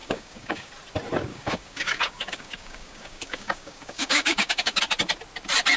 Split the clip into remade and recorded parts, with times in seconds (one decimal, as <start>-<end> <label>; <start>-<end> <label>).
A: 0.0-0.7 remade; 0.7-1.3 recorded; 1.3-4.8 remade; 4.8-5.8 recorded